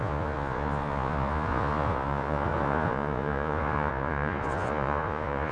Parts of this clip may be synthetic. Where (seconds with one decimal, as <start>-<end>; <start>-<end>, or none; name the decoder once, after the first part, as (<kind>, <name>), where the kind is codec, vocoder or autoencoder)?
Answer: 0.0-5.5 (vocoder, Vocos)